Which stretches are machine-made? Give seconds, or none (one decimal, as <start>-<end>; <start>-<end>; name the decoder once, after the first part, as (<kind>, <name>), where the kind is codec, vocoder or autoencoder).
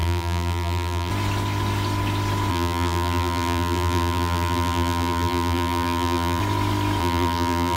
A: 0.0-1.1 (vocoder, BigVGAN v2); 2.5-6.4; 7.0-7.8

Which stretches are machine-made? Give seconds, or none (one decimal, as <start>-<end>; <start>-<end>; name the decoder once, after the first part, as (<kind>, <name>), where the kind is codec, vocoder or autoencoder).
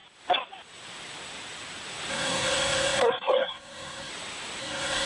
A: 2.1-4.1 (codec, SNAC); 4.6-5.1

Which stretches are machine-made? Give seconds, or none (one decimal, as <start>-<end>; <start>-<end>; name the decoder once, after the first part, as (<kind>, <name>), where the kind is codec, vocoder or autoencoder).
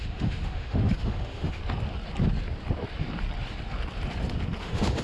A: 0.0-1.6 (autoencoder, DAC-VAE); 4.6-5.0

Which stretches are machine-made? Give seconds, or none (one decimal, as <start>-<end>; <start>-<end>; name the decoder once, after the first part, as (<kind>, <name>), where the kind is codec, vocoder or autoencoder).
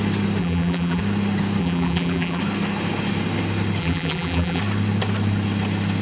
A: 0.4-1.0 (vocoder, BigVGAN v2); 1.6-2.4; 3.8-4.6